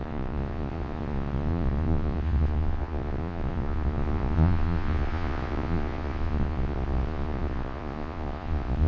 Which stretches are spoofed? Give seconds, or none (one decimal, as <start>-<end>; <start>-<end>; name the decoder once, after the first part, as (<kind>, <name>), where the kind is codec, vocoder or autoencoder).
0.0-8.9 (vocoder, Vocos)